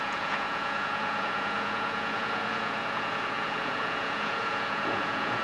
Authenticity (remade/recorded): remade